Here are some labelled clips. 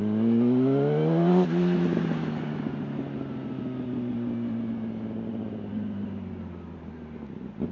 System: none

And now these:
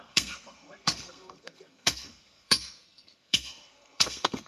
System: codec, SNAC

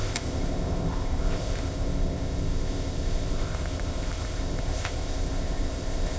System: codec, ZipCodec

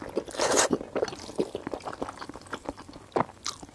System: none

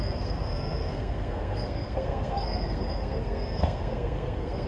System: codec, SNAC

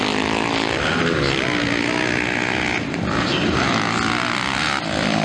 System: none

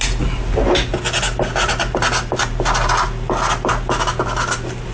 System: none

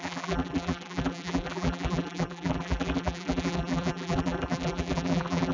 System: vocoder, BigVGAN v2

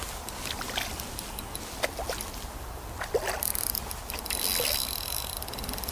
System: none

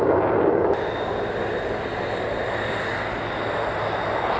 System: none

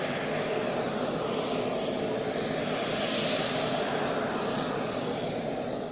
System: none